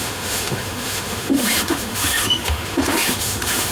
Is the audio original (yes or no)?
no